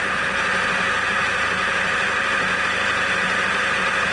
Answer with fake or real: real